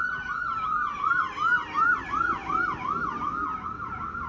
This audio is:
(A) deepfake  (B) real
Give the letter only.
B